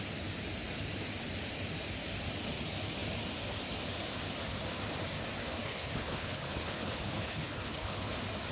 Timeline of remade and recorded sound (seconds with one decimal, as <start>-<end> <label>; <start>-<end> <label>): 0.0-5.4 recorded; 5.4-8.1 remade; 8.1-8.5 recorded